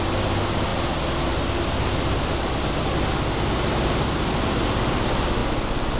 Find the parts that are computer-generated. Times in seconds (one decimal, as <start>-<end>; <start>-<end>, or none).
none